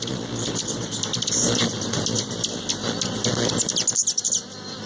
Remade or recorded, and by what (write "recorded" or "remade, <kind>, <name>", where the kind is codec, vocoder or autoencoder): recorded